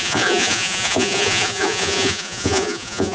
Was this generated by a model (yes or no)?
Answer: yes